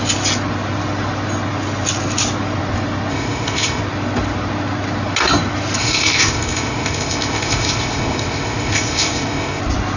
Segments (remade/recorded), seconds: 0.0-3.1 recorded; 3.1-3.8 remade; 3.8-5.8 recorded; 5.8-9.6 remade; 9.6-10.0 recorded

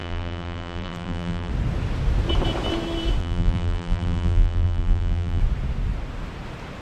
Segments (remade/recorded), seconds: 0.0-1.5 remade; 1.5-3.2 recorded; 3.2-5.4 remade; 5.4-6.8 recorded

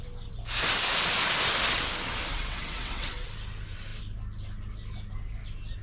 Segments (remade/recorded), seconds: 0.0-2.3 recorded; 2.3-3.3 remade; 3.3-5.8 recorded

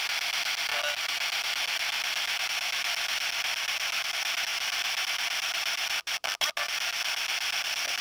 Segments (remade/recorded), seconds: 0.0-8.0 recorded

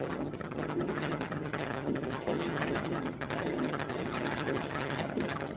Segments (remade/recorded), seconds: 0.0-5.6 remade

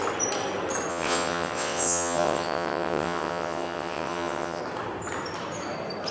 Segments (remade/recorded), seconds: 0.0-0.9 recorded; 0.9-4.6 remade; 4.6-6.1 recorded

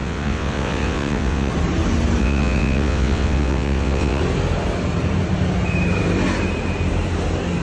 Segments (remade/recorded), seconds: 0.0-1.5 remade; 1.5-2.2 recorded; 2.2-4.2 remade; 4.2-7.6 recorded

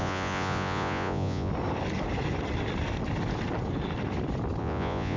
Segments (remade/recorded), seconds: 0.0-1.5 remade; 1.5-4.6 recorded; 4.6-5.2 remade